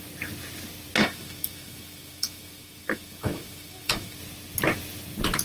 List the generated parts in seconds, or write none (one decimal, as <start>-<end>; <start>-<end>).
1.0-4.2